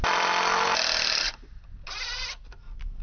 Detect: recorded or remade recorded